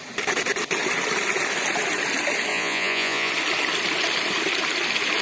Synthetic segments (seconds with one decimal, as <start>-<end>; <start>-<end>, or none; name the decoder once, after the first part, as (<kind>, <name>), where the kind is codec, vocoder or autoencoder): 2.5-3.3 (vocoder, Vocos)